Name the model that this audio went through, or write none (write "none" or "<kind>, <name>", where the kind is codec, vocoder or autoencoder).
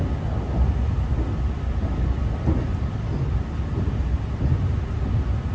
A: none